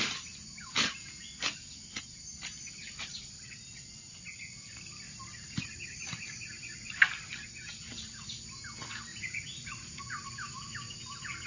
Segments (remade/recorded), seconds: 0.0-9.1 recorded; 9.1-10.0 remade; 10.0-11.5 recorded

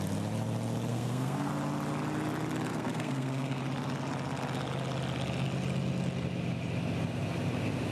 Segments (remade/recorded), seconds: 0.0-0.9 recorded; 0.9-1.5 remade; 1.5-2.7 recorded; 2.7-3.6 remade; 3.6-7.9 recorded

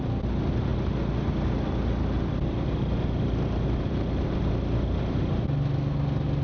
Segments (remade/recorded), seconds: 0.0-6.4 recorded

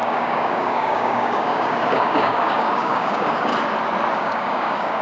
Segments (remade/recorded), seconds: 0.0-3.5 remade; 3.5-4.1 recorded; 4.1-5.0 remade

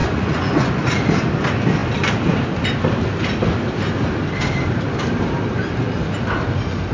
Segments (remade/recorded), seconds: 0.0-0.7 remade; 0.7-6.9 recorded

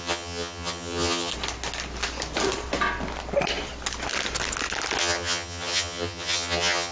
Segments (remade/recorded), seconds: 0.0-1.3 remade; 1.3-5.0 recorded; 5.0-6.9 remade

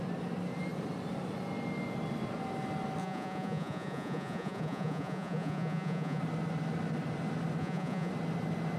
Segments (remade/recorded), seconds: 0.0-3.0 recorded; 3.0-6.2 remade; 6.2-7.6 recorded; 7.6-8.1 remade; 8.1-8.8 recorded